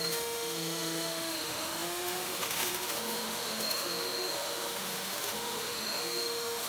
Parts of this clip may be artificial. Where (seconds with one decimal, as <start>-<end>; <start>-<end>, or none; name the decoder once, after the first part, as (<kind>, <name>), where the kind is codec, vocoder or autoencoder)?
0.0-6.7 (autoencoder, DAC-VAE)